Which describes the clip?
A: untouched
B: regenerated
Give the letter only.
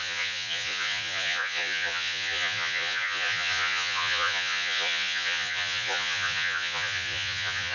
B